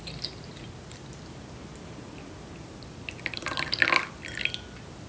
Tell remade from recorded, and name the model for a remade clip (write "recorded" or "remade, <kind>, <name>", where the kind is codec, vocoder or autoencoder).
recorded